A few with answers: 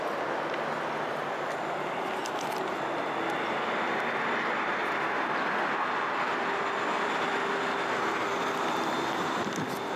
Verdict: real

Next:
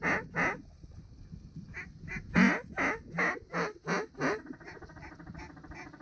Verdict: real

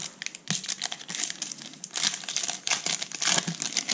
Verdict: real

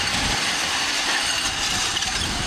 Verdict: fake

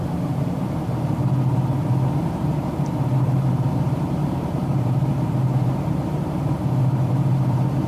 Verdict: fake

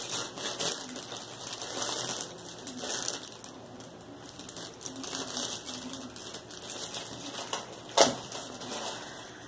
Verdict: real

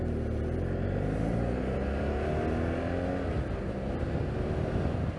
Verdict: real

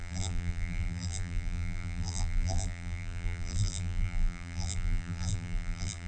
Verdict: fake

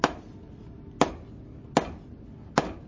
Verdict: real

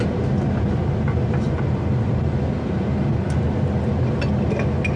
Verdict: real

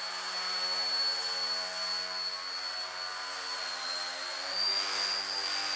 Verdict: real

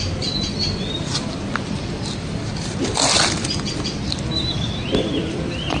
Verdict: fake